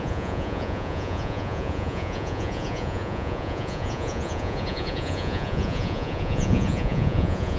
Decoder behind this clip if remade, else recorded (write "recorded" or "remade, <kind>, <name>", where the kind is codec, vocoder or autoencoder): remade, vocoder, Vocos